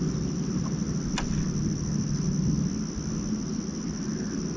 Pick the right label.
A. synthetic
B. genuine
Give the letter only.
B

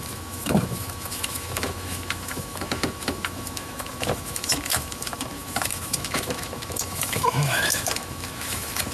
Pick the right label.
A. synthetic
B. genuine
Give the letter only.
A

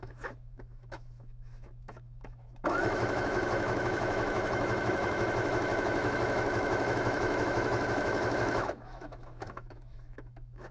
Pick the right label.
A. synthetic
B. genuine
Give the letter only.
A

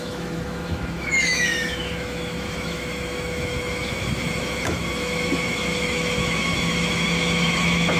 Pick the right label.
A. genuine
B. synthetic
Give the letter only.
B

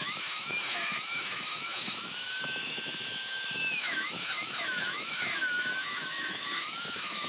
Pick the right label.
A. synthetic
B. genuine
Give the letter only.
A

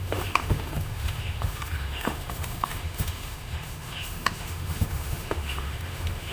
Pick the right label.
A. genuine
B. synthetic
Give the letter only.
B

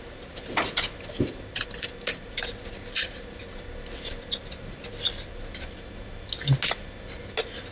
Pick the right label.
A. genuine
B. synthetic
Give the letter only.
A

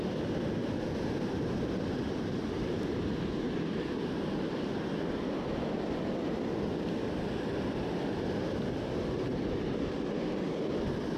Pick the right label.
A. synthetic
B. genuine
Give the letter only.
B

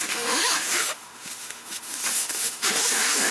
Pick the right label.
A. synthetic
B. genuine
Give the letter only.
A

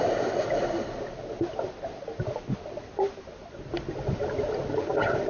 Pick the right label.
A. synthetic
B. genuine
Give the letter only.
B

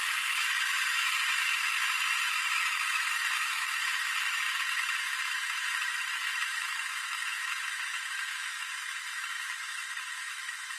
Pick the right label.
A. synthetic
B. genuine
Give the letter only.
A